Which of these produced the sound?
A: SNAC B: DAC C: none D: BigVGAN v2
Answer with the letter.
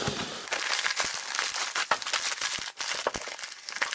C